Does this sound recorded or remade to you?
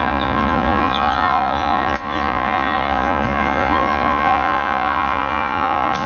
remade